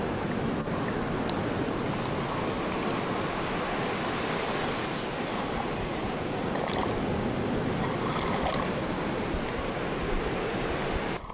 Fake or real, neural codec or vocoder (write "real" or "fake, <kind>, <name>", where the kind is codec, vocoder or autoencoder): real